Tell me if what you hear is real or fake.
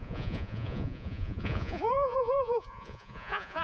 fake